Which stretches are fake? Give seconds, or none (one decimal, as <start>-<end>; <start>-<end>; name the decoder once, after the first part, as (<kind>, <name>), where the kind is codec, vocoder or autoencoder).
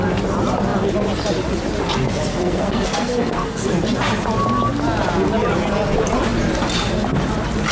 2.3-3.7 (codec, SNAC)